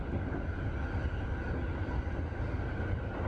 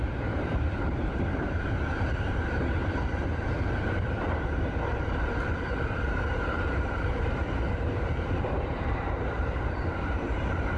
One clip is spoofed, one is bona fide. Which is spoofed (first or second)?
second